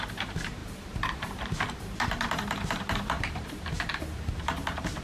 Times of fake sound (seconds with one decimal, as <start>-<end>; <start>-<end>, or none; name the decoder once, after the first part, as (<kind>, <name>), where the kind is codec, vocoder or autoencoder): 0.0-5.0 (vocoder, BigVGAN v2)